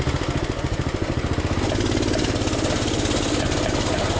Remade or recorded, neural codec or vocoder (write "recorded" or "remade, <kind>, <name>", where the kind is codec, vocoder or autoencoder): recorded